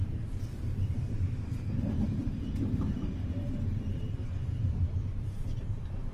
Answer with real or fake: fake